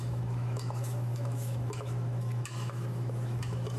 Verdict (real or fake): fake